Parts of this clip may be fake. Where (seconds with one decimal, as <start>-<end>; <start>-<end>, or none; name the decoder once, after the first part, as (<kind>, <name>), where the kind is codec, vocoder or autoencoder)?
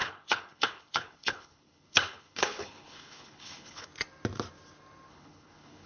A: 0.0-3.9 (codec, HILCodec); 5.1-5.9